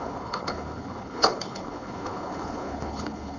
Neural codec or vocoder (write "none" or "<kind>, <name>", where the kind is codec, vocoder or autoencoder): codec, HILCodec